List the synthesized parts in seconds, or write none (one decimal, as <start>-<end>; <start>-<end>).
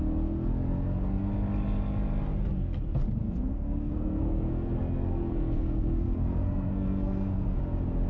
3.2-7.6